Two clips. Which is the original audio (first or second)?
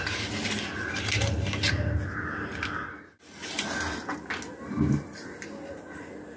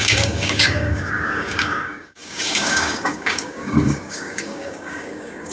first